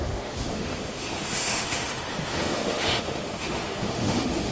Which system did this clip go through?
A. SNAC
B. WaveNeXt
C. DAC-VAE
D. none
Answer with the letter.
C